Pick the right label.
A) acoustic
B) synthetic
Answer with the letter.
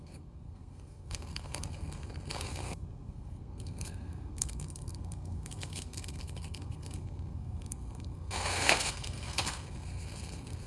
B